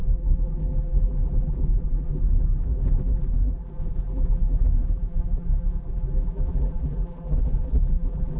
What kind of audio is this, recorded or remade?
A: remade